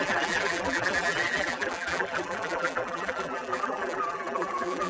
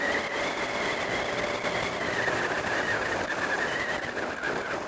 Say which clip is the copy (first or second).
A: first